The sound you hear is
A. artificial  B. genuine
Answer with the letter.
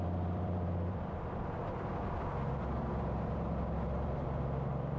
A